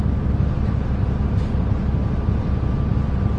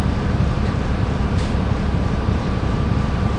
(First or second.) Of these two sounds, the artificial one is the second